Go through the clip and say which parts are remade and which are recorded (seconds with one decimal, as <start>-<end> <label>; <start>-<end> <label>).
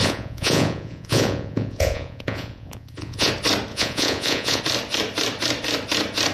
0.0-3.3 remade; 3.3-3.7 recorded; 3.7-4.6 remade; 4.6-6.3 recorded